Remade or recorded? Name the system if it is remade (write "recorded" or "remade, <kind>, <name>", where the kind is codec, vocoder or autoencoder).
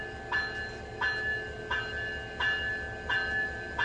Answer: recorded